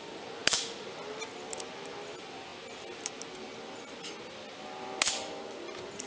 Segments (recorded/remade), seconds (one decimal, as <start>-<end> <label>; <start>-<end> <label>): 0.0-6.1 recorded